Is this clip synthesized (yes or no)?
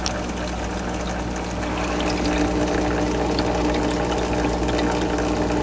no